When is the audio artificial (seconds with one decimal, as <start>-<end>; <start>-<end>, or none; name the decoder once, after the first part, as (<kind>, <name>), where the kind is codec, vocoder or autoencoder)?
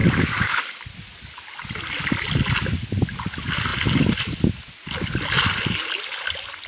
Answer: 0.0-0.6 (codec, DAC)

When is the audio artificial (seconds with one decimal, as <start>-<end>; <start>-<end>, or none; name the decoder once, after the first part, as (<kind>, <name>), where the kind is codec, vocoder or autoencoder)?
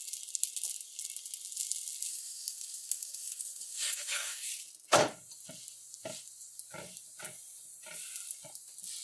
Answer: 2.1-4.5 (codec, DAC)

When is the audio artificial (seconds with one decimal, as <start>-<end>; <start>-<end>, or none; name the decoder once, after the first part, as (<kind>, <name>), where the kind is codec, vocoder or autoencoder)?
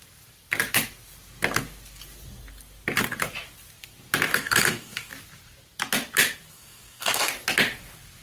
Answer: 4.3-5.1 (codec, DAC); 6.5-7.3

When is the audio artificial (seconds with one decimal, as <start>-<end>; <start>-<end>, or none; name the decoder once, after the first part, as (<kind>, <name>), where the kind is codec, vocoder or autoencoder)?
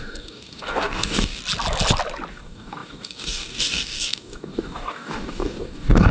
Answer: 0.0-1.4 (codec, DAC); 2.3-6.1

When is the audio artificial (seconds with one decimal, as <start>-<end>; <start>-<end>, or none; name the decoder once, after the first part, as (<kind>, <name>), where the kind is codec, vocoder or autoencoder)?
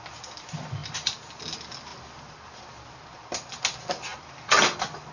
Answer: none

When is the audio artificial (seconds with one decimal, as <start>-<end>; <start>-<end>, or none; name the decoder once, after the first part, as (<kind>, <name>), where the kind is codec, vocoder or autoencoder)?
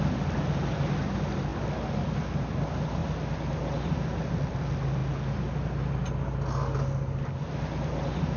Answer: none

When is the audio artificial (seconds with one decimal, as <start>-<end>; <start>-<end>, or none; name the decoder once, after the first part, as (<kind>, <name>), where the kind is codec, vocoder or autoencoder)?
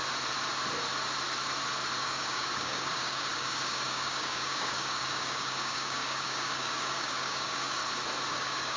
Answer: 2.0-7.8 (codec, DAC); 8.3-8.8